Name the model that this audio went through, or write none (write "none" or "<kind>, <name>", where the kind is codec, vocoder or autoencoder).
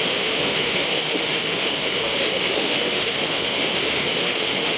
autoencoder, DAC-VAE